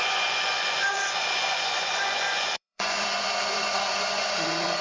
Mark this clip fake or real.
fake